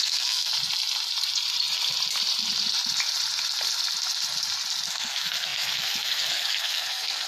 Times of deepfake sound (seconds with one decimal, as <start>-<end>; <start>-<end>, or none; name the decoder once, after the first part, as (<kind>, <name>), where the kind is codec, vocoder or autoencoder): 0.0-0.5 (codec, SNAC); 4.9-7.3